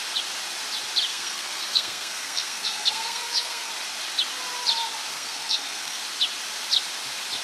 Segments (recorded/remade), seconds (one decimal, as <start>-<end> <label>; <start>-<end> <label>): 0.0-1.1 recorded; 1.1-3.7 remade; 3.7-5.1 recorded; 5.1-6.0 remade; 6.0-7.4 recorded